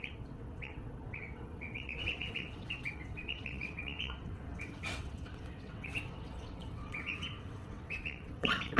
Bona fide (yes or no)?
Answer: no